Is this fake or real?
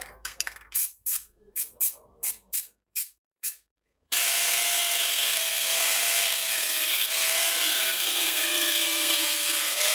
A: fake